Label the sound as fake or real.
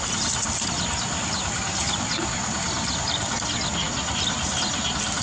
real